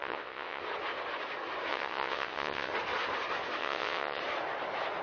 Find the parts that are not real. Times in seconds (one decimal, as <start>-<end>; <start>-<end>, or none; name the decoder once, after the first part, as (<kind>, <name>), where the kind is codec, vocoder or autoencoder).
0.0-0.6 (vocoder, WaveNeXt); 1.7-2.7; 3.6-4.2